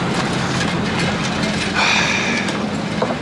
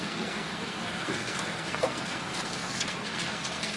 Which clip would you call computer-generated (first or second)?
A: second